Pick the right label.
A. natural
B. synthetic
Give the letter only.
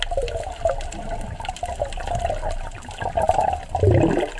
A